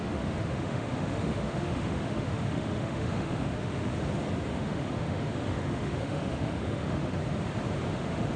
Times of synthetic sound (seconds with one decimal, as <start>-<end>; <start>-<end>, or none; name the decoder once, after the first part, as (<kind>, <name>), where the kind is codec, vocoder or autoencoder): 0.0-3.9 (autoencoder, DAC-VAE); 4.5-7.2; 7.9-8.4